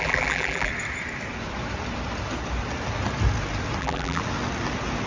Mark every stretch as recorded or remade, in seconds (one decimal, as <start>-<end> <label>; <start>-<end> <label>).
0.0-0.7 remade; 0.7-3.8 recorded; 3.8-4.2 remade; 4.2-5.1 recorded